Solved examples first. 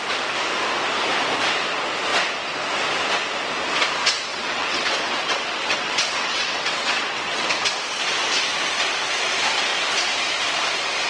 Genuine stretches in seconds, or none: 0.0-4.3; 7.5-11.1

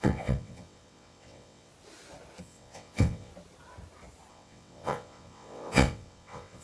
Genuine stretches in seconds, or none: 1.7-2.4; 3.3-4.3

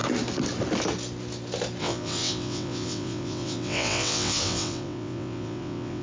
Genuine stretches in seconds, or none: 0.0-1.8

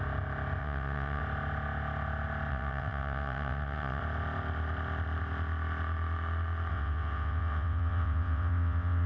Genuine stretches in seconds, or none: 0.0-0.6; 1.2-2.5; 4.0-6.7

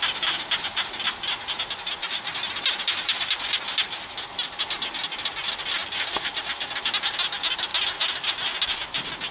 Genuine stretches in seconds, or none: 0.0-9.3